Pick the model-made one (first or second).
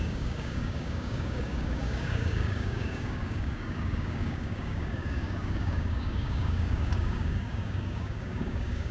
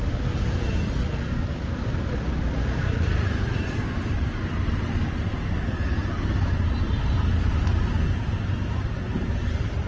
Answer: first